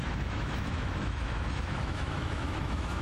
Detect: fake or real fake